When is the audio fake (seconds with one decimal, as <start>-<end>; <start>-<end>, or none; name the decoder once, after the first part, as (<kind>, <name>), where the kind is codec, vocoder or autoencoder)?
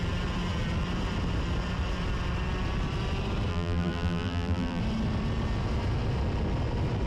3.5-4.8 (vocoder, BigVGAN v2)